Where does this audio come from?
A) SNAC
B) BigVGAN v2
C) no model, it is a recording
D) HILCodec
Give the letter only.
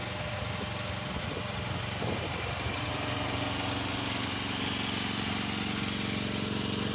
C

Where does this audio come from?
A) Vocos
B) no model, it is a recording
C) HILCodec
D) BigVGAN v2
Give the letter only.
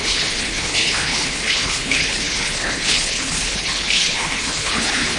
C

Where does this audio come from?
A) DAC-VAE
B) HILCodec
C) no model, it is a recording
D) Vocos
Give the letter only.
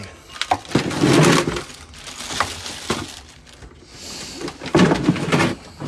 C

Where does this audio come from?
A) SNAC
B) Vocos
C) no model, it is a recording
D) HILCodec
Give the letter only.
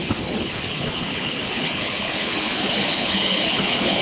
D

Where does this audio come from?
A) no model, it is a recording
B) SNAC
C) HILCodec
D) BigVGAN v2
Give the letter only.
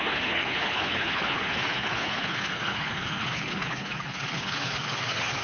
C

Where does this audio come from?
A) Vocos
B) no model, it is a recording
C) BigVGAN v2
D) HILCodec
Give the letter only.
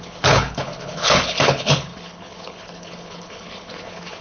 D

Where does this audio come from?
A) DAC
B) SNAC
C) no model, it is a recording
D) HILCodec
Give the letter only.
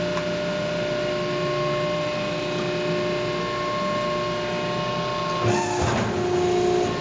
C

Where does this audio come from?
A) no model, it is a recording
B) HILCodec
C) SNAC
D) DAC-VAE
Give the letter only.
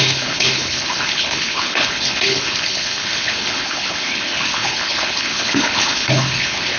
B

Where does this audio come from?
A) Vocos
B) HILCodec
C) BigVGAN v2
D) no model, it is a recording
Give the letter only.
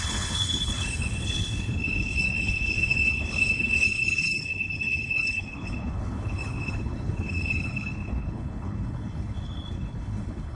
B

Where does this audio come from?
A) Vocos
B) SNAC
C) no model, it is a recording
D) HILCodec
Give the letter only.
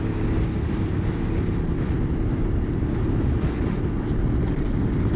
C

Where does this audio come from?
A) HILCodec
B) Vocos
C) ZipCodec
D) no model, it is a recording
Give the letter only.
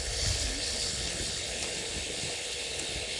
A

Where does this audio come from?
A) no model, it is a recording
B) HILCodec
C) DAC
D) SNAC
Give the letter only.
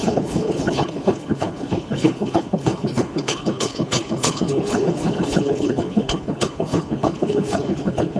B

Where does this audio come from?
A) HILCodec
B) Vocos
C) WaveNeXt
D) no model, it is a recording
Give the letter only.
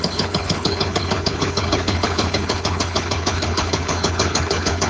A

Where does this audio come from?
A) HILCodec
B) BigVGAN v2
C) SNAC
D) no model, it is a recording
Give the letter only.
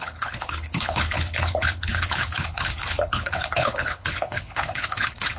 A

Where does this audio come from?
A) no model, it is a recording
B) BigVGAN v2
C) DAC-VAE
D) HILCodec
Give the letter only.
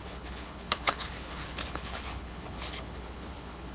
D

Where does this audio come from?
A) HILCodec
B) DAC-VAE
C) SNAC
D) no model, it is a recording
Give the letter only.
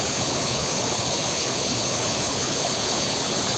A